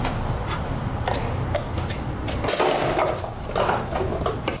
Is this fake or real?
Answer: real